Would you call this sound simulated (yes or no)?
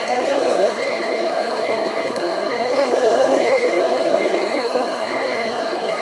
yes